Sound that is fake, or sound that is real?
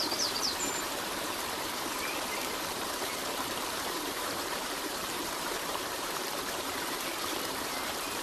fake